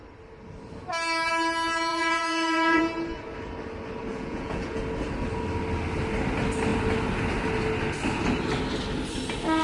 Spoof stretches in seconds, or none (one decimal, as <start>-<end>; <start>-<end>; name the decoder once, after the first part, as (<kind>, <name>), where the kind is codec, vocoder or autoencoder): 1.9-2.8 (vocoder, Vocos); 4.1-4.8